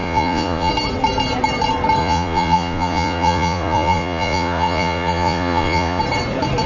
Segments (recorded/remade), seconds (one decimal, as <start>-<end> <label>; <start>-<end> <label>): 0.0-0.7 remade; 0.7-2.0 recorded; 2.0-6.0 remade; 6.0-6.7 recorded